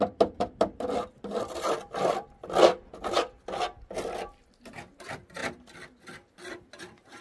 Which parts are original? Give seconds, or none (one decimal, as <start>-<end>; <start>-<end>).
0.0-7.2